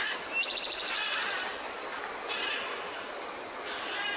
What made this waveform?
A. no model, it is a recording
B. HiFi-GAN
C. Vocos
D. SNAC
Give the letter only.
A